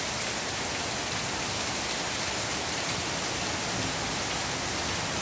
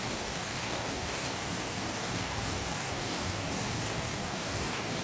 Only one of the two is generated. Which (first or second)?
second